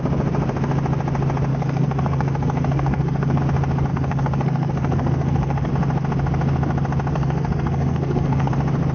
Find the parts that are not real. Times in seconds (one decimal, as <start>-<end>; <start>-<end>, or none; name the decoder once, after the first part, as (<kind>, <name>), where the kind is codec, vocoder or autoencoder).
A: 1.5-3.4 (codec, SNAC); 3.9-5.7; 7.1-8.5